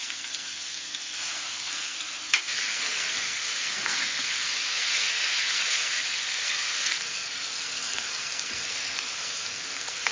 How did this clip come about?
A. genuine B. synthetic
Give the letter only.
B